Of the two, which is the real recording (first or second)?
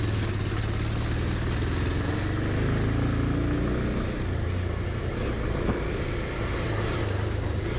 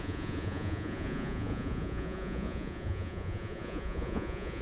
first